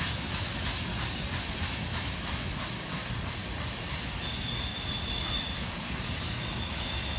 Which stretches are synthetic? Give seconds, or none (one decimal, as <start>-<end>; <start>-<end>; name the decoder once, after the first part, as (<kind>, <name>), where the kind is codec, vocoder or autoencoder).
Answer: 0.0-0.9 (autoencoder, DAC-VAE); 1.4-3.0; 6.3-7.2